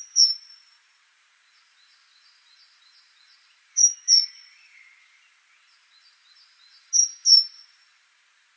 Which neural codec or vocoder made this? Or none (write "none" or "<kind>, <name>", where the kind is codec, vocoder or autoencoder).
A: none